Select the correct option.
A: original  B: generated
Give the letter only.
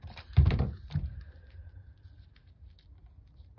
B